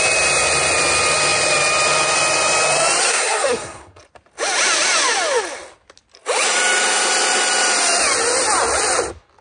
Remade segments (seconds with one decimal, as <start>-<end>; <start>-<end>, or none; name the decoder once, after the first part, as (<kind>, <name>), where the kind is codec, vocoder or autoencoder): 3.1-4.0 (codec, SNAC)